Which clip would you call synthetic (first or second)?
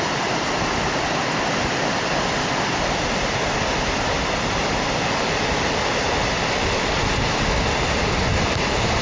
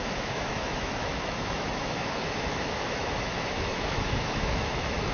second